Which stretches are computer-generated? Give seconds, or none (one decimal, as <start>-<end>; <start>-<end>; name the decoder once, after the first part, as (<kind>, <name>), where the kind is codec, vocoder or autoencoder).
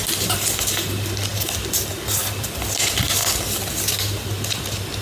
none